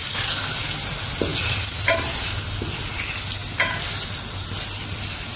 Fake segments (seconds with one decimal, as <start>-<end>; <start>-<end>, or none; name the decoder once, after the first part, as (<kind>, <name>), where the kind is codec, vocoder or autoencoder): 0.0-0.5 (codec, DAC)